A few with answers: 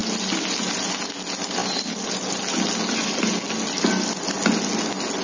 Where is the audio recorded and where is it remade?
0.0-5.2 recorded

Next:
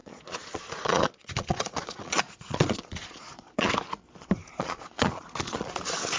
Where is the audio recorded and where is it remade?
0.0-3.7 remade; 3.7-4.5 recorded; 4.5-5.8 remade; 5.8-6.2 recorded